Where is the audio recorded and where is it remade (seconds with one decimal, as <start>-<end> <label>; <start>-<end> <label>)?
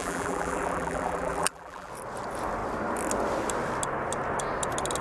0.0-1.9 remade; 1.9-5.0 recorded